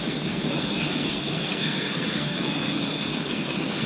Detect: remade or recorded remade